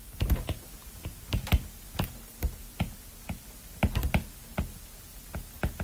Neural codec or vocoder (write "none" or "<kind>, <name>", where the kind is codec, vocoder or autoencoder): none